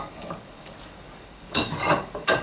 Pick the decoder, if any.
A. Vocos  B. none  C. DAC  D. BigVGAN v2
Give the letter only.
C